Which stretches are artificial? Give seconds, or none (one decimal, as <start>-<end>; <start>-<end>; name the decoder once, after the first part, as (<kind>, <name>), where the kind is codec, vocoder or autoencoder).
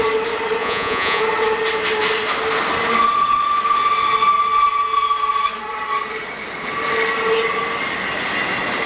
0.6-1.2 (vocoder, Vocos)